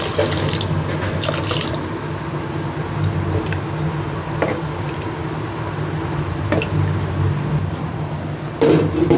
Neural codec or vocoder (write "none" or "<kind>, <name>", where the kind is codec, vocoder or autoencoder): none